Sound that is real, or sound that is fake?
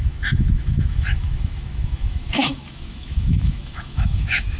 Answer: fake